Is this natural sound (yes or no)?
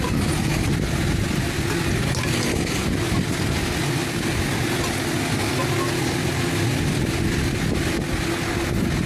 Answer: yes